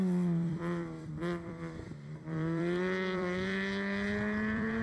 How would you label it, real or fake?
fake